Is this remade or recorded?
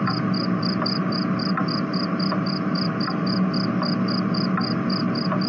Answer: recorded